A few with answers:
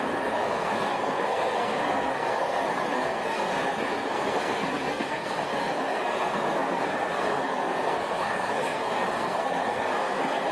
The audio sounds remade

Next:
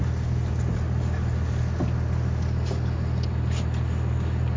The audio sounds recorded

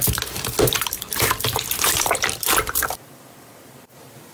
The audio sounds remade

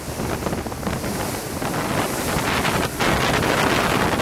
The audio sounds recorded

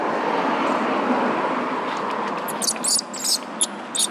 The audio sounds recorded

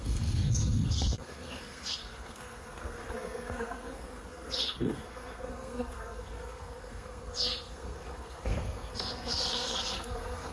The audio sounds remade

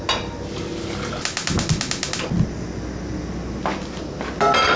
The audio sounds recorded